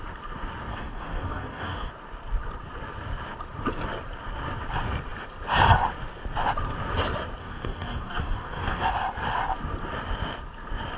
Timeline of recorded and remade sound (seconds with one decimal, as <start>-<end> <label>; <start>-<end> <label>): 0.0-0.7 recorded; 0.7-1.9 remade; 1.9-7.4 recorded; 7.4-8.9 remade; 8.9-11.0 recorded